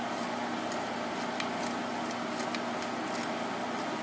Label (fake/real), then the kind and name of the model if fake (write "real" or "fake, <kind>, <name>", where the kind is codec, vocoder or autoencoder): real